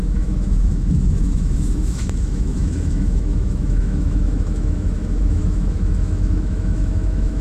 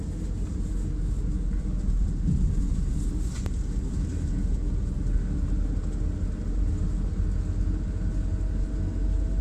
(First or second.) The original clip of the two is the second